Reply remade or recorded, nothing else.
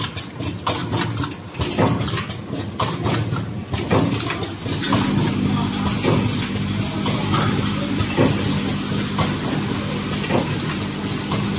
recorded